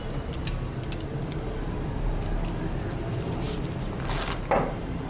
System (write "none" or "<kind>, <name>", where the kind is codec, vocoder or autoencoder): none